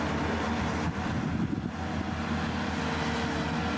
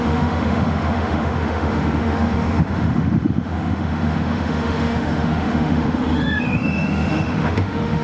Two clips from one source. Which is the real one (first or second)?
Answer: first